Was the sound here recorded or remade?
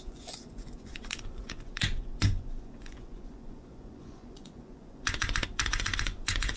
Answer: remade